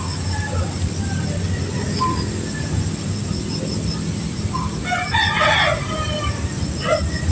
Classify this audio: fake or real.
real